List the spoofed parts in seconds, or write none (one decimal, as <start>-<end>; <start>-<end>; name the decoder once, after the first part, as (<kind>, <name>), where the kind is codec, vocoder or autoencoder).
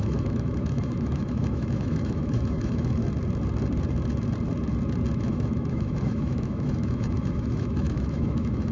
0.0-3.0 (autoencoder, DAC-VAE); 5.2-8.7